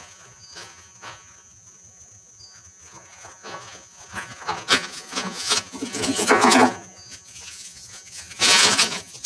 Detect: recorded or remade remade